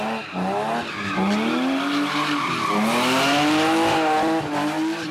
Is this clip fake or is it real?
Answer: real